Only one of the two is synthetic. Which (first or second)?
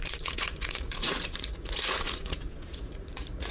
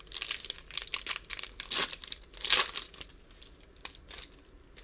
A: first